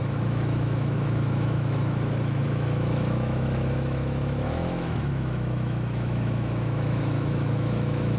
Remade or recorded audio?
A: remade